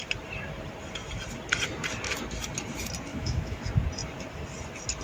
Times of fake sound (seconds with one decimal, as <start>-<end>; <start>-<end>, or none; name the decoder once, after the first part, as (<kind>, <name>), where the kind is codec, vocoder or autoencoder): 3.1-3.6 (autoencoder, DAC-VAE)